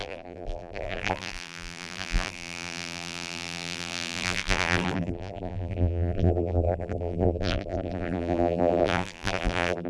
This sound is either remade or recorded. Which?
remade